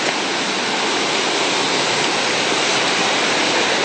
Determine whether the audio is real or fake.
real